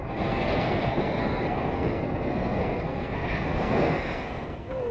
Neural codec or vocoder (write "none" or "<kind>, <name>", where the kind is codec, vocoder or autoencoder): codec, SNAC